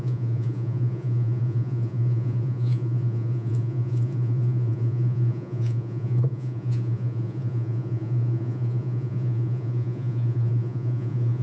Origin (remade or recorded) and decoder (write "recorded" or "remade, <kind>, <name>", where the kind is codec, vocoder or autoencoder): remade, vocoder, Vocos